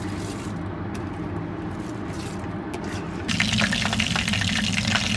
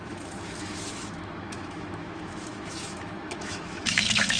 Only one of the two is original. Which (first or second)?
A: first